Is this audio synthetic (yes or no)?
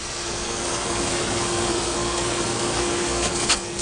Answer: yes